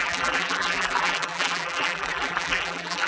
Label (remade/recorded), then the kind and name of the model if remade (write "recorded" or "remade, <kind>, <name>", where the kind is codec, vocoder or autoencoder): remade, vocoder, BigVGAN v2